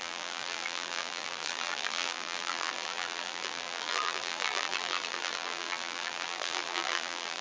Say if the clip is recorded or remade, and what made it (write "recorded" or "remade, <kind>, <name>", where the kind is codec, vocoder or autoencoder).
remade, vocoder, BigVGAN v2